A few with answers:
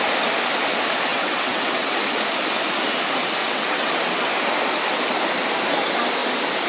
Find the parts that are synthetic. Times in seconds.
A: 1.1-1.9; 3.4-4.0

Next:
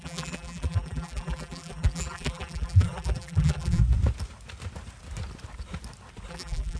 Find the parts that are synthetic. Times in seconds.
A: 0.0-3.8; 6.3-6.8